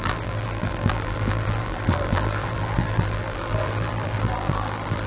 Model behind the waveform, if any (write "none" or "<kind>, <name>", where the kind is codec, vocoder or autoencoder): vocoder, BigVGAN v2